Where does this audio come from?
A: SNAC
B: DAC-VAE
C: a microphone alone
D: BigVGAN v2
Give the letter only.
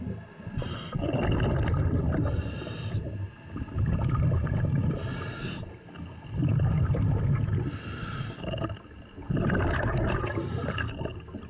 C